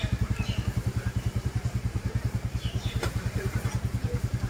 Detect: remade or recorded remade